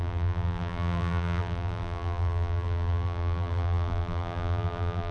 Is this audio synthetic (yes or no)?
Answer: yes